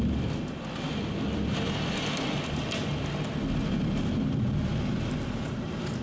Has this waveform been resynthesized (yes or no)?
no